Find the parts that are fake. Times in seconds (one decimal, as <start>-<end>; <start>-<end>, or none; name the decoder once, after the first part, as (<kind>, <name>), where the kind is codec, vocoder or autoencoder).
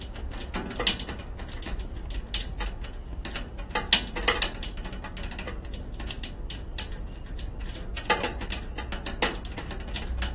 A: none